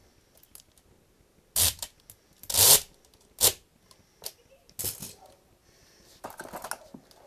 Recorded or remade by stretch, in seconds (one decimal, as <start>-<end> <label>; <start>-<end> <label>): 0.0-7.3 recorded